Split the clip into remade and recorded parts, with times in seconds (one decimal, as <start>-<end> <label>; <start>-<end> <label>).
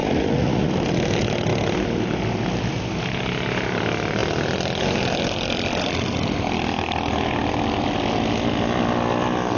0.0-0.7 remade; 0.7-9.6 recorded